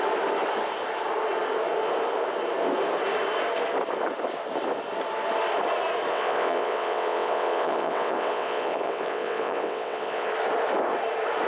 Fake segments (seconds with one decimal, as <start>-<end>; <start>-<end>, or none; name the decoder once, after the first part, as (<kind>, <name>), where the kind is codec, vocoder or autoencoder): 6.1-10.3 (vocoder, WaveNeXt)